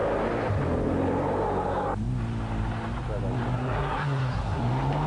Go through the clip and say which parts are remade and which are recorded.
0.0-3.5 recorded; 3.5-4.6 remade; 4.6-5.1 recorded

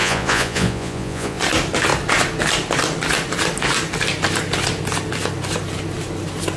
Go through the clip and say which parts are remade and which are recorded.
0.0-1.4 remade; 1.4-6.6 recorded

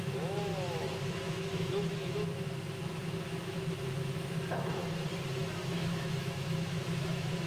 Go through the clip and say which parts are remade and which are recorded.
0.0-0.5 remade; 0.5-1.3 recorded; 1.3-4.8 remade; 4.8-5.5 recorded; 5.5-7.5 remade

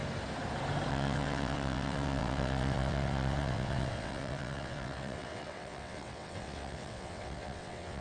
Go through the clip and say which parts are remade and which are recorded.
0.0-0.9 recorded; 0.9-8.0 remade

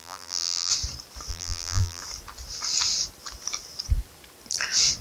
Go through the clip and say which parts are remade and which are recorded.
0.0-0.7 remade; 0.7-1.3 recorded; 1.3-2.0 remade; 2.0-5.0 recorded

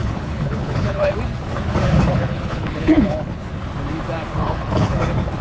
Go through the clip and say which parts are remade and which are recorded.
0.0-1.1 remade; 1.1-2.1 recorded; 2.1-3.5 remade; 3.5-4.3 recorded; 4.3-5.0 remade; 5.0-5.4 recorded